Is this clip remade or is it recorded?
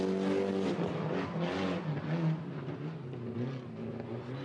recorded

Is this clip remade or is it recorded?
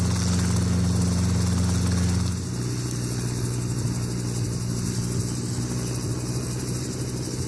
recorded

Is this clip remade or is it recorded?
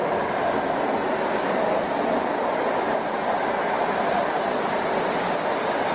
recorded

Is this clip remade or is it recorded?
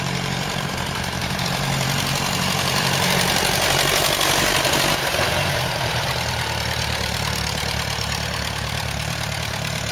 remade